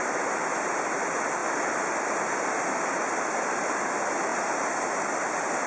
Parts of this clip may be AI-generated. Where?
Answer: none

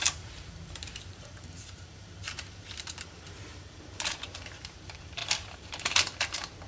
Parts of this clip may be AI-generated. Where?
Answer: 0.0-6.7 (vocoder, BigVGAN v2)

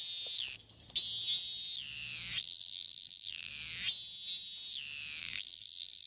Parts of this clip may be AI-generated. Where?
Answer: 2.4-3.5 (vocoder, BigVGAN v2); 5.2-6.1

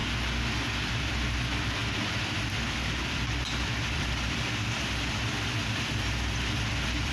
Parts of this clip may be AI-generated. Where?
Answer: 0.9-7.1 (vocoder, BigVGAN v2)

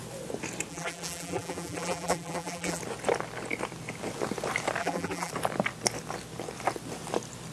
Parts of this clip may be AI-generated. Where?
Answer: 0.7-2.8 (vocoder, BigVGAN v2); 4.8-5.3

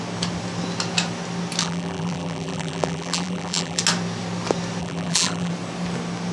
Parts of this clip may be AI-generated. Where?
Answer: 1.6-3.8 (vocoder, BigVGAN v2); 4.8-5.5